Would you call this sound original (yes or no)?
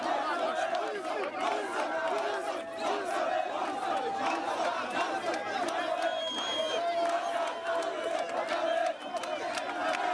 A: yes